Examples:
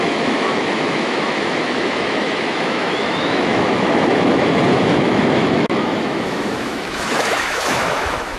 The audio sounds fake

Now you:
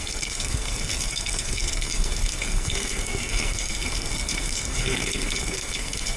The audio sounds fake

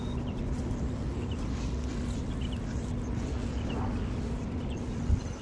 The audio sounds real